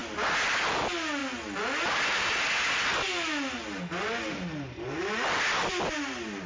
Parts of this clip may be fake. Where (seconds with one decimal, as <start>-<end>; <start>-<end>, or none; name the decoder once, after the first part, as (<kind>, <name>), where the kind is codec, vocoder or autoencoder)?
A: none